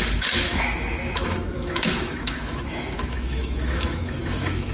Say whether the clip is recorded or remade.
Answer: remade